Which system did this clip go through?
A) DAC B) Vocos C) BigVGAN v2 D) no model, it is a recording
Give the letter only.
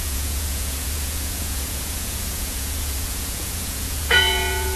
B